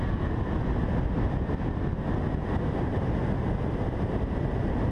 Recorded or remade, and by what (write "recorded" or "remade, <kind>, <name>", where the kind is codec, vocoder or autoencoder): recorded